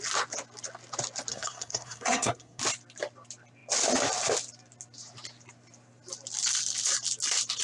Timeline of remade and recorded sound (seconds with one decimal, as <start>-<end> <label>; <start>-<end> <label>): 0.0-1.3 recorded; 1.3-2.6 remade; 2.6-7.6 recorded